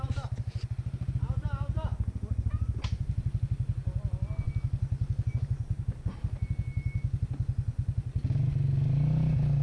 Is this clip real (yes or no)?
yes